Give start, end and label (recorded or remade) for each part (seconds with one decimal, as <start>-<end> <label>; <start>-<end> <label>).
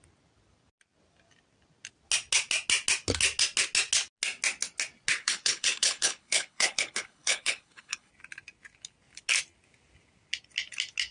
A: 0.0-5.2 recorded; 5.2-8.1 remade; 8.1-11.1 recorded